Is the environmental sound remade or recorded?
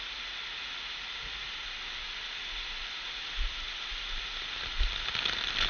recorded